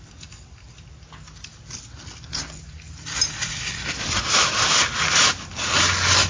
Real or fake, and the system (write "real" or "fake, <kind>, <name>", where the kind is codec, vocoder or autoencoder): real